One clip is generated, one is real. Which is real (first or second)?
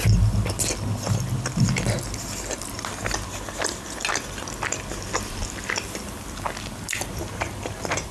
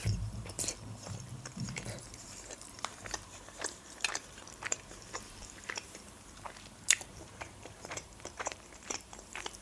first